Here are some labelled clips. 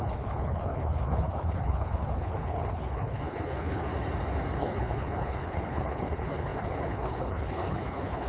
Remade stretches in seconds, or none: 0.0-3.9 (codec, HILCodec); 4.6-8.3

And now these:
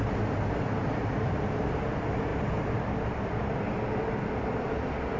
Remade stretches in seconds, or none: none

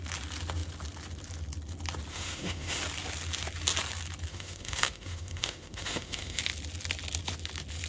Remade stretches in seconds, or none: 2.1-2.8 (autoencoder, DAC-VAE); 4.3-6.4